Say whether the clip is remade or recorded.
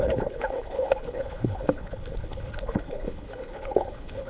remade